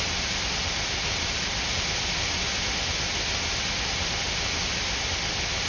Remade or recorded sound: recorded